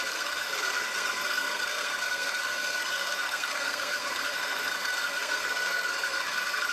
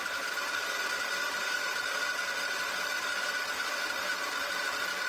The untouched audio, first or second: second